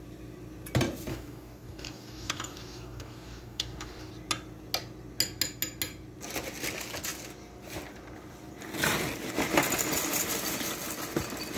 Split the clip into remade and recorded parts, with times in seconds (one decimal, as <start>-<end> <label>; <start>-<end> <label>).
0.0-1.1 recorded; 1.1-4.1 remade; 4.1-11.6 recorded